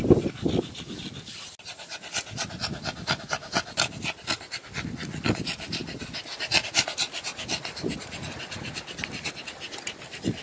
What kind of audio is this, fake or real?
real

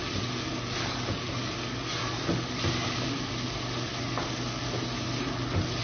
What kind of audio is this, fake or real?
real